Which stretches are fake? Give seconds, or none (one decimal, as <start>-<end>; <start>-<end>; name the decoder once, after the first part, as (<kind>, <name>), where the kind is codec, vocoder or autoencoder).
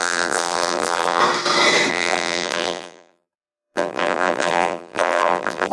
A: 0.0-1.2 (vocoder, BigVGAN v2); 1.9-5.7